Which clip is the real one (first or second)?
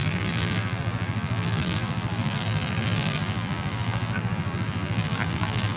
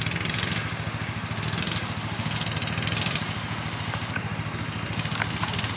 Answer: second